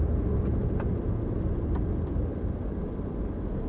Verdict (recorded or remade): recorded